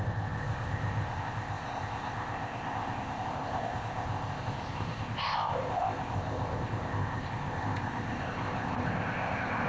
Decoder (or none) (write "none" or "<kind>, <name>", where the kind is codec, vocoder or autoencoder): codec, ZipCodec